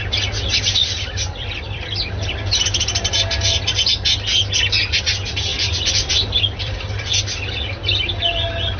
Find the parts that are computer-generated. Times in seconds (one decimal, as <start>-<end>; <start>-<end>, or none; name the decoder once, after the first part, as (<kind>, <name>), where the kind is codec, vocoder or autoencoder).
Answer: 0.8-2.3 (vocoder, BigVGAN v2); 5.5-6.1; 6.6-7.1